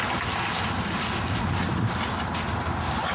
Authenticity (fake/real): real